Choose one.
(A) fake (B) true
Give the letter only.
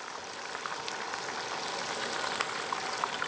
B